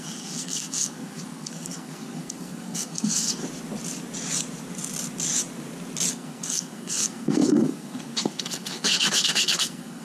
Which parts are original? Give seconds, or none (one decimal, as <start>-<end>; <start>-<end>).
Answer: 3.4-6.1